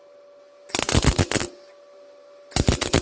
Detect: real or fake real